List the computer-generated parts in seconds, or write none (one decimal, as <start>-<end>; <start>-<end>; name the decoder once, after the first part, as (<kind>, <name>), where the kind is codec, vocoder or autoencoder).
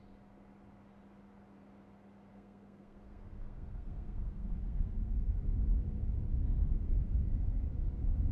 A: 2.3-5.4 (codec, SNAC); 6.6-7.6